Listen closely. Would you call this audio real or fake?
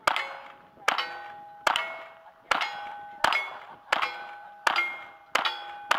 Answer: real